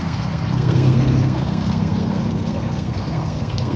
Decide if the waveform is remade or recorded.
remade